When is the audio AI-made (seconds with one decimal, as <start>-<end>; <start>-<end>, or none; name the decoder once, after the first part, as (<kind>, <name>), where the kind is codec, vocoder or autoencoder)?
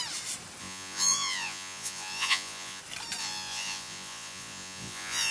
0.6-2.8 (vocoder, Vocos); 3.2-5.3